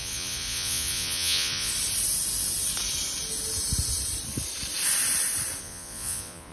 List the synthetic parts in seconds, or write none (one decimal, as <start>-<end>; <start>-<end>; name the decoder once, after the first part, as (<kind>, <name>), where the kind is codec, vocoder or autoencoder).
0.0-1.7 (vocoder, Vocos); 5.6-6.5